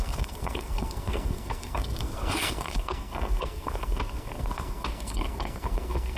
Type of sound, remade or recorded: remade